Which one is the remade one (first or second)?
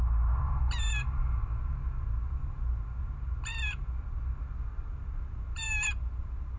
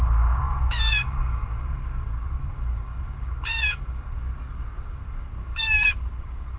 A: second